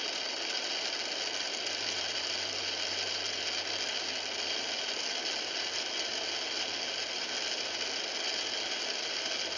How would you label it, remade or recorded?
recorded